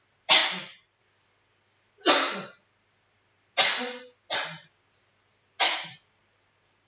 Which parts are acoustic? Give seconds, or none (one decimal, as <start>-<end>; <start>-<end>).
0.0-6.9